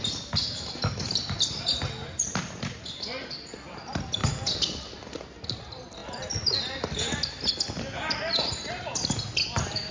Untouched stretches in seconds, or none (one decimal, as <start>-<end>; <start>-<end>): 0.0-9.9